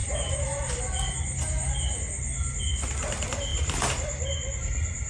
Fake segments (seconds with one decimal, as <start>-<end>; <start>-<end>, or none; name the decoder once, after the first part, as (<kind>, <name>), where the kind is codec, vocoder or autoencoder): 0.0-0.8 (vocoder, BigVGAN v2); 3.5-5.1

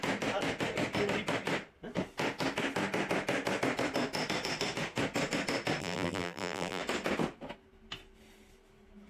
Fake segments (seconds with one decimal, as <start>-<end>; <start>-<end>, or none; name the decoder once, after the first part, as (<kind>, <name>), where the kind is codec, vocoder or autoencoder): 5.8-6.8 (vocoder, BigVGAN v2)

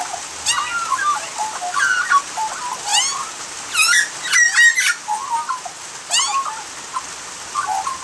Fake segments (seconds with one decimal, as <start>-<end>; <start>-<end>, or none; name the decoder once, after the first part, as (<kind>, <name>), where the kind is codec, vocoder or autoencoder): none

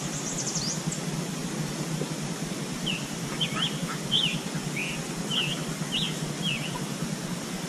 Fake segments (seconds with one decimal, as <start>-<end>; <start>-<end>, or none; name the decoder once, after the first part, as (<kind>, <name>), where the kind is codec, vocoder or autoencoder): 0.0-1.4 (vocoder, BigVGAN v2); 2.5-4.8; 6.3-7.7

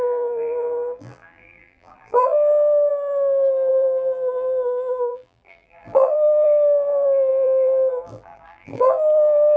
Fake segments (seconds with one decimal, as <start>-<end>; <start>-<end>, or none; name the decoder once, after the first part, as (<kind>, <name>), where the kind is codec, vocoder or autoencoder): 0.0-2.9 (vocoder, BigVGAN v2); 3.7-9.6

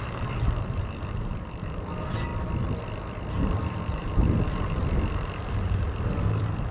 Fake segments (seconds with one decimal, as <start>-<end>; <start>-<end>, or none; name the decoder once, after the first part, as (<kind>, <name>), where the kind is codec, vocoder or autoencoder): 0.0-2.3 (vocoder, BigVGAN v2); 3.3-4.8; 5.5-6.7

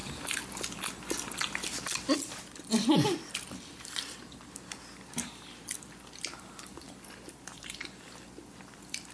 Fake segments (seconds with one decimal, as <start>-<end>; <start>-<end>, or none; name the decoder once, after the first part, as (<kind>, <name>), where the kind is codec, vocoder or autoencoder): 2.1-9.1 (vocoder, BigVGAN v2)